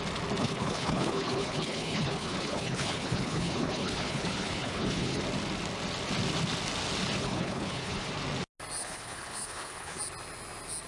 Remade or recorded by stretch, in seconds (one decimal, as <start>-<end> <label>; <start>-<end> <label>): 0.0-0.4 recorded; 0.4-5.2 remade; 5.2-7.2 recorded; 7.2-8.1 remade; 8.1-8.8 recorded; 8.8-10.0 remade; 10.0-10.9 recorded